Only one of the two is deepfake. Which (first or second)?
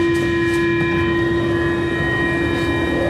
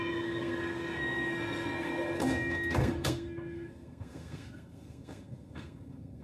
second